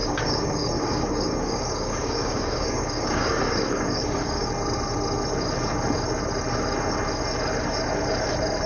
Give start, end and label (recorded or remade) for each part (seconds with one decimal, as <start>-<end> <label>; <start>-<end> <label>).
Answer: 0.0-4.5 remade; 4.5-8.7 recorded